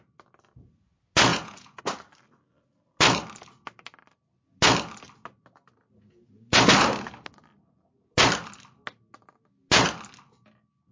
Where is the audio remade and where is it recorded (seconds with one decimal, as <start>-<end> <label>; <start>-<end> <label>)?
0.0-1.3 recorded; 1.3-1.8 remade; 1.8-10.9 recorded

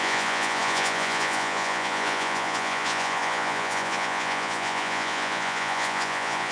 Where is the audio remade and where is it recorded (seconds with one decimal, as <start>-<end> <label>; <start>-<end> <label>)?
0.0-6.5 remade

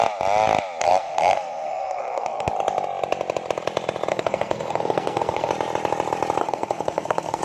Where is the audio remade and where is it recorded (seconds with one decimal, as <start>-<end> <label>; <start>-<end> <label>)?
0.0-0.8 recorded; 0.8-2.5 remade; 2.5-4.1 recorded; 4.1-5.5 remade; 5.5-6.4 recorded; 6.4-7.4 remade

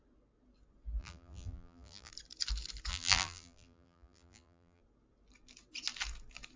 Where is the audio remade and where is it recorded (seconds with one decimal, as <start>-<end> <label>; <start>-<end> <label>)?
0.0-1.0 recorded; 1.0-2.1 remade; 2.1-2.9 recorded; 2.9-4.8 remade; 4.8-6.6 recorded